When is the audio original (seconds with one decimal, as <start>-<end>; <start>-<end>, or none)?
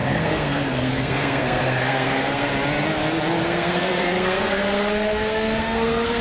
2.5-3.4